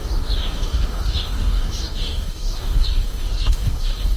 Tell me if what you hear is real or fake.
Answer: fake